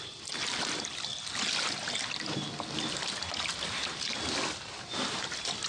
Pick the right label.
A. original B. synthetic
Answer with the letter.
A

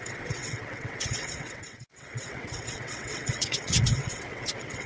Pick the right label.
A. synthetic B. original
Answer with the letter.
A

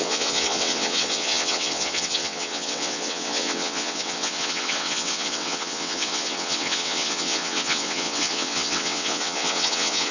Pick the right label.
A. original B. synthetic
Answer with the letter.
B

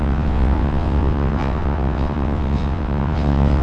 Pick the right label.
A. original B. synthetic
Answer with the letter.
B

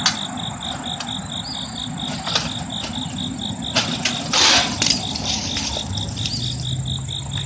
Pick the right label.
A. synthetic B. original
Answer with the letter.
B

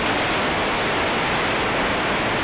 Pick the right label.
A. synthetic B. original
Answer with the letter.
B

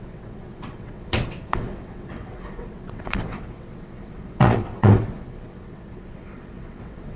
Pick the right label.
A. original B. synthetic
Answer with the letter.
B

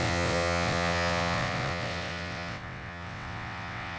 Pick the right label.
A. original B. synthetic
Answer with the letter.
B